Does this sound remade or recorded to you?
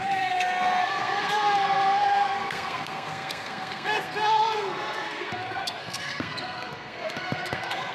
remade